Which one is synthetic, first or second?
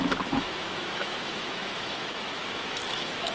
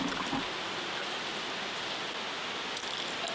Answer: first